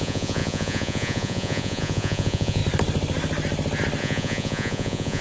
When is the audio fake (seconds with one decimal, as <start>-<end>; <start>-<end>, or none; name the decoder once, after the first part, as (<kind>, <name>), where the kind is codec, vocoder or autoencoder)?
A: 0.0-2.6 (vocoder, Vocos); 4.0-5.2